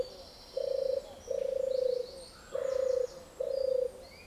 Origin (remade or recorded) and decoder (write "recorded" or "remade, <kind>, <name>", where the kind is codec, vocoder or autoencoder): recorded